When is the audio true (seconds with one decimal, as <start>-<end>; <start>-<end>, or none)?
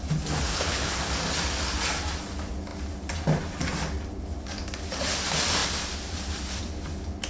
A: 0.0-0.5; 1.0-7.3